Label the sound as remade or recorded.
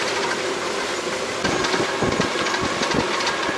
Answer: recorded